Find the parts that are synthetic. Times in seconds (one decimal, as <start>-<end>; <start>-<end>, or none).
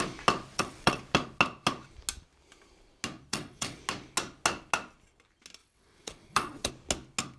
0.5-1.0; 3.3-3.8; 5.6-6.7